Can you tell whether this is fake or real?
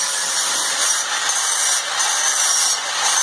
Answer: real